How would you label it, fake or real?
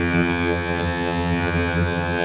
fake